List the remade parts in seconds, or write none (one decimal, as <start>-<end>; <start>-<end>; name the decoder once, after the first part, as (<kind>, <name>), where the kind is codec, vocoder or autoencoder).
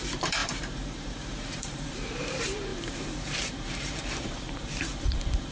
0.0-5.5 (vocoder, BigVGAN v2)